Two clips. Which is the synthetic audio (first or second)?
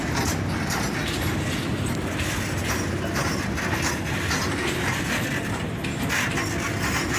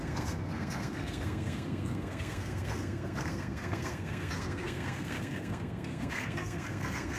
second